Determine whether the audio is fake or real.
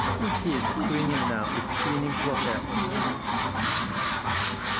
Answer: real